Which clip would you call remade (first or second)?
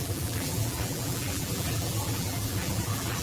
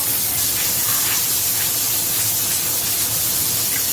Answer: first